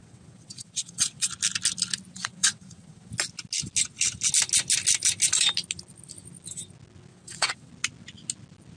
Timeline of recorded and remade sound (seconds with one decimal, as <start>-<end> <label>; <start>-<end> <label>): 0.0-1.3 remade; 1.3-2.1 recorded; 2.1-3.1 remade; 3.1-7.1 recorded; 7.1-7.7 remade; 7.7-8.8 recorded